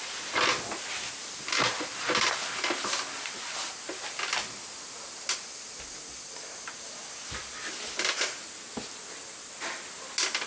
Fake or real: real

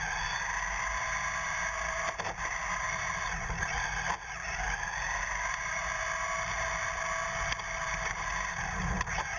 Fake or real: real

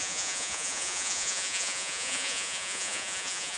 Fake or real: fake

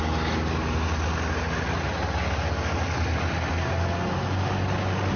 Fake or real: real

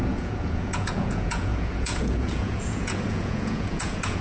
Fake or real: fake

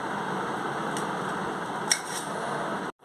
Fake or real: real